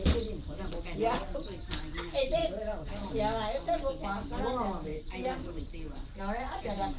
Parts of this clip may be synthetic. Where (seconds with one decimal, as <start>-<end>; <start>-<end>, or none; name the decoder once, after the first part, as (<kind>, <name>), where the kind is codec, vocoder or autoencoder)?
2.4-3.1 (vocoder, Vocos)